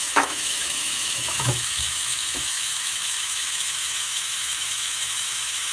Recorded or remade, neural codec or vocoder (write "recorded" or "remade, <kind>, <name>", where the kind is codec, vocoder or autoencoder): remade, autoencoder, DAC-VAE